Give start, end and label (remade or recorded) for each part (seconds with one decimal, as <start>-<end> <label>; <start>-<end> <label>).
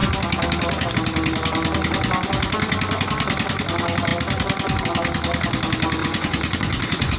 0.0-6.0 recorded; 6.0-7.2 remade